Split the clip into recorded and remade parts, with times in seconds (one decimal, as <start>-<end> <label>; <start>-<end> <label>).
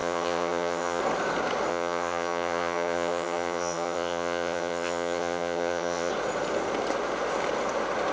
0.0-1.0 remade; 1.0-1.7 recorded; 1.7-6.1 remade; 6.1-8.1 recorded